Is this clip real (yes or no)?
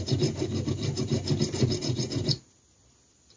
yes